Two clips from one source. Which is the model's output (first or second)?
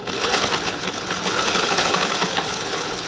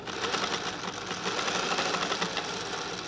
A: first